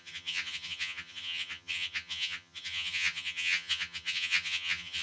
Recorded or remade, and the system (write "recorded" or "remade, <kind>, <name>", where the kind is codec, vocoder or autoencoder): remade, vocoder, HiFi-GAN